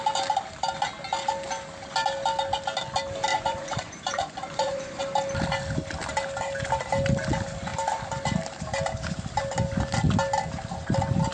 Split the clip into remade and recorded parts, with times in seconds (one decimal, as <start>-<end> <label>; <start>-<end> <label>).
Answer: 0.0-3.3 recorded; 3.3-5.0 remade; 5.0-11.3 recorded